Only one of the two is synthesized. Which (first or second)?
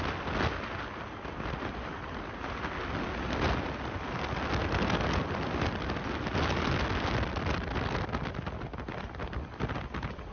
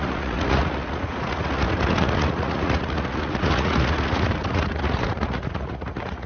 second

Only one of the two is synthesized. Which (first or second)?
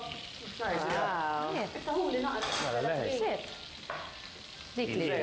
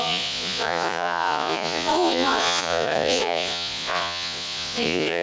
second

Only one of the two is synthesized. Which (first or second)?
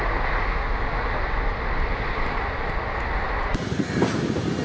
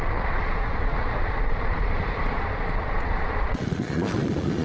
second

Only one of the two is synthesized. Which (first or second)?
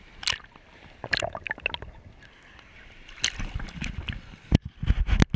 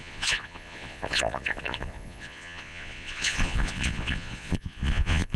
second